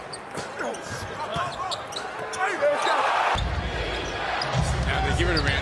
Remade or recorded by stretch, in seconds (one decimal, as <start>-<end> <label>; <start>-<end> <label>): 0.0-5.6 recorded